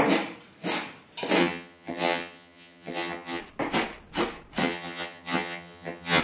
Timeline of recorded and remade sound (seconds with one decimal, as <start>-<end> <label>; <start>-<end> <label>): 0.0-1.4 recorded; 1.4-3.4 remade; 3.4-4.6 recorded; 4.6-6.2 remade